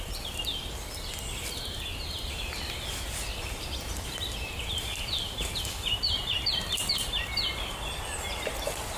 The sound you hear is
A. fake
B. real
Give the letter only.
A